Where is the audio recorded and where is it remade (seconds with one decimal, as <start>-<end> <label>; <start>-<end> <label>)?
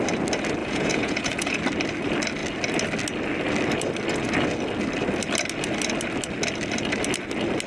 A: 0.0-0.6 recorded; 0.6-1.6 remade; 1.6-7.7 recorded